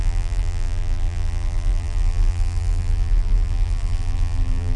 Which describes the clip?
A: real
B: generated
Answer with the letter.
B